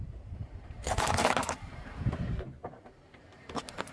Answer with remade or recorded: remade